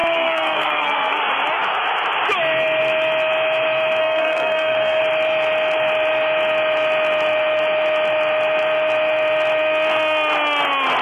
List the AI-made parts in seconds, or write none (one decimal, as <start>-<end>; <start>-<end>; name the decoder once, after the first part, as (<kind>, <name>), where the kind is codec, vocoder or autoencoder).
0.0-1.2 (codec, SNAC); 4.0-5.0

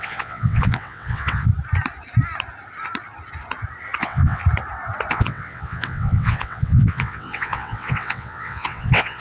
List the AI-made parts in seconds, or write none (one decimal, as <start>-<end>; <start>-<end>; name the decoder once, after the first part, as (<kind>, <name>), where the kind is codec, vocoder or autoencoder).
0.0-1.5 (vocoder, WaveNeXt); 4.0-4.4; 5.1-9.2

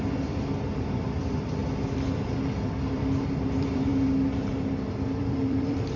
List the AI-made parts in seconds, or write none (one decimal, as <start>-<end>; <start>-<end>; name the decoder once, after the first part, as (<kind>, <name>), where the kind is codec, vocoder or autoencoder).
0.0-1.6 (vocoder, BigVGAN v2); 2.8-3.9; 5.2-6.0

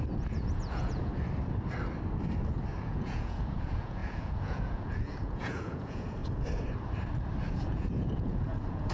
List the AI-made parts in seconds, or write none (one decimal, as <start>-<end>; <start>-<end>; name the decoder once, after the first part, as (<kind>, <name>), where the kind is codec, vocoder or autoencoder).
0.0-1.1 (vocoder, Vocos); 2.8-6.2; 7.5-8.9

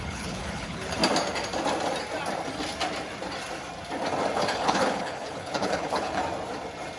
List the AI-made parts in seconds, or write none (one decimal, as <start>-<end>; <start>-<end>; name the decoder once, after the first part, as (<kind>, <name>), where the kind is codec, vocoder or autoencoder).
0.0-1.0 (codec, HILCodec); 4.5-6.2